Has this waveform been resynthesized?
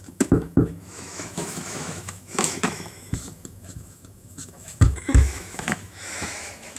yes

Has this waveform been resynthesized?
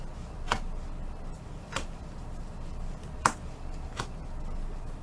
no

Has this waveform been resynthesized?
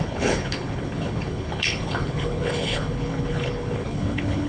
yes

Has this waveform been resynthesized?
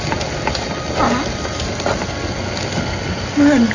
no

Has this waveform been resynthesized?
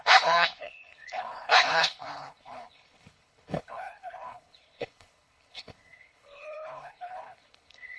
yes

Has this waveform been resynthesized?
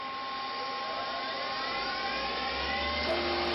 no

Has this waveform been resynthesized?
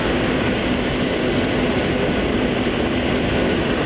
no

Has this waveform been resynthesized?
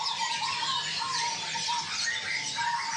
no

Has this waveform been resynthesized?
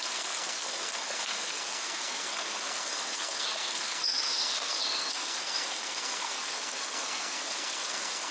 yes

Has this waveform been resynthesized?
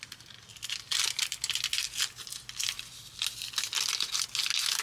no